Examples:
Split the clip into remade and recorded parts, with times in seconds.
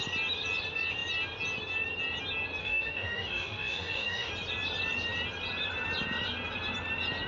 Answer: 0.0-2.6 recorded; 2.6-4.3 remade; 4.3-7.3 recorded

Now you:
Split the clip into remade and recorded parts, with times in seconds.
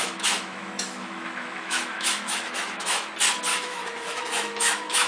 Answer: 0.0-3.1 remade; 3.1-3.5 recorded; 3.5-5.1 remade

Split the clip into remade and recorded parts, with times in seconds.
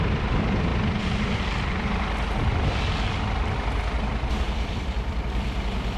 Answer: 0.0-0.7 remade; 0.7-4.3 recorded; 4.3-6.0 remade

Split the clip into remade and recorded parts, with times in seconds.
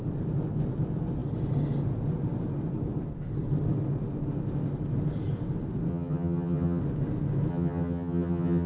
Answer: 0.0-5.9 recorded; 5.9-6.8 remade; 6.8-7.5 recorded; 7.5-8.7 remade